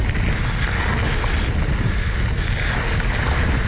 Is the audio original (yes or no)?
yes